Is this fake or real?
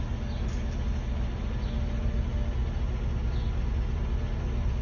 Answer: real